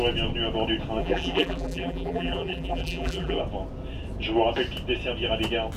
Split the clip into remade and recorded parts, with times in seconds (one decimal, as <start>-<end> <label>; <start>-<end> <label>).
0.0-1.0 recorded; 1.0-3.4 remade; 3.4-5.8 recorded